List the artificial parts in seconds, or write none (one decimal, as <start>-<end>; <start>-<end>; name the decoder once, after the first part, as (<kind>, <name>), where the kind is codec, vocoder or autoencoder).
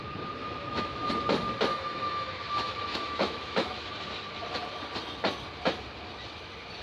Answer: 0.4-1.1 (autoencoder, DAC-VAE); 1.7-3.9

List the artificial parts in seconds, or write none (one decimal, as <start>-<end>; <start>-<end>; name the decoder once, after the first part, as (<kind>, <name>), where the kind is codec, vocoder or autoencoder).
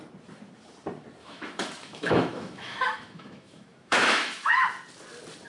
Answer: 1.2-4.5 (autoencoder, DAC-VAE)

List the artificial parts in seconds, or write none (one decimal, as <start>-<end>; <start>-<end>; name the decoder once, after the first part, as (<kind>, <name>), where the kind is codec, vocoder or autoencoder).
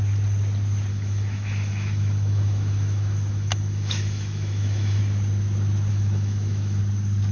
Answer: 0.9-5.0 (autoencoder, DAC-VAE); 5.9-6.8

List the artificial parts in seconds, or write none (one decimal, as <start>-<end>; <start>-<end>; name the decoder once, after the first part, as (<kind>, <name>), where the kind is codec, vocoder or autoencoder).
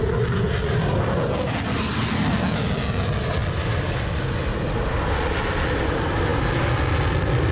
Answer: none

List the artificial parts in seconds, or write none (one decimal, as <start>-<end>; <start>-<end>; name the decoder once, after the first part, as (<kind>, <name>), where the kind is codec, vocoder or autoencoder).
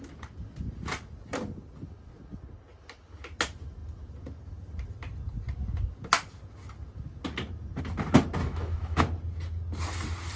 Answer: 8.4-9.0 (autoencoder, DAC-VAE)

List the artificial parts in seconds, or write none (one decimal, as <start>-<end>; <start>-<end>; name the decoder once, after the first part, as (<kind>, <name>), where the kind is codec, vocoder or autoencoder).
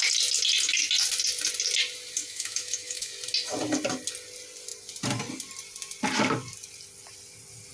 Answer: 2.2-3.1 (autoencoder, DAC-VAE)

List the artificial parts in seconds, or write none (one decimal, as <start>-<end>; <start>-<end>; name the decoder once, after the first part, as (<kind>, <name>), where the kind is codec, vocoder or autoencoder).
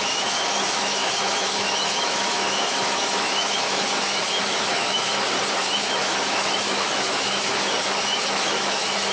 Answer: 0.0-5.1 (autoencoder, DAC-VAE); 5.6-9.1